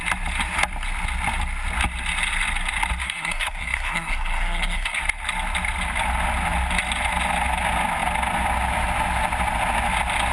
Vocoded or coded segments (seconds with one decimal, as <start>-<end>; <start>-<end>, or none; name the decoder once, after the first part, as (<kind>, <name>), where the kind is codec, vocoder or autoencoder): 3.0-5.0 (codec, SNAC)